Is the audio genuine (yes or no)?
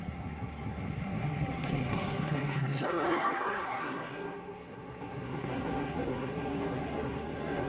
no